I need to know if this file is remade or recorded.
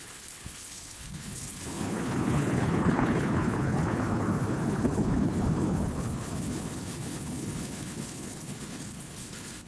remade